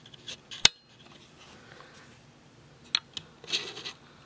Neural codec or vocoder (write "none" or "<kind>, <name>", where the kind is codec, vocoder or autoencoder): none